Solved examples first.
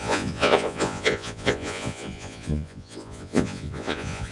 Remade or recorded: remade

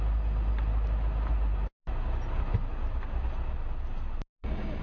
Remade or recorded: recorded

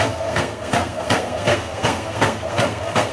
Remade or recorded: remade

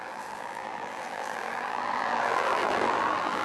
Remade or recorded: remade